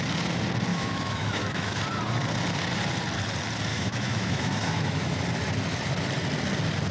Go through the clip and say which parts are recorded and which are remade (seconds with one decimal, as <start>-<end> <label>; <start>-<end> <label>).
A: 0.0-0.7 recorded; 0.7-1.8 remade; 1.8-3.7 recorded; 3.7-5.2 remade; 5.2-6.9 recorded